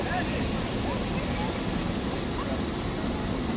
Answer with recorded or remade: recorded